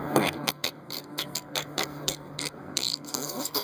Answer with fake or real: fake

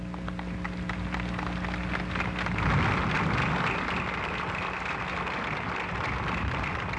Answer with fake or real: real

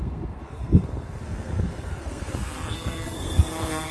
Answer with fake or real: fake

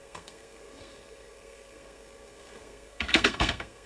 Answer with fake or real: fake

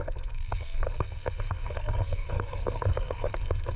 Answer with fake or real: fake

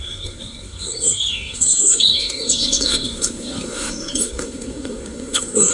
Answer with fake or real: fake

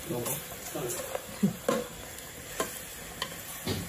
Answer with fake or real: real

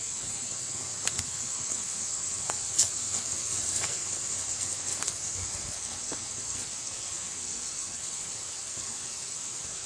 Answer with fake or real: fake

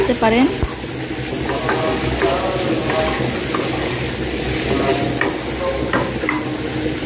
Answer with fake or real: real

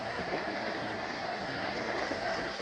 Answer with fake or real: fake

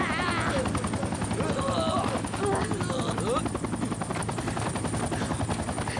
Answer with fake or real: real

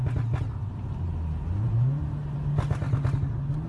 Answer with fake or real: real